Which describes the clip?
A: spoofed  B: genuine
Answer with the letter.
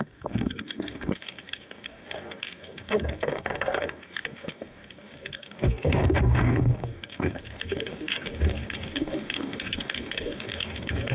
A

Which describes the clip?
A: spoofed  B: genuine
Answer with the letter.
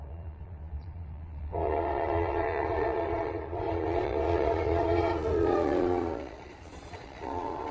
A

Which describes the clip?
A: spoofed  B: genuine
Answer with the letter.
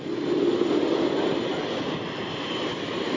B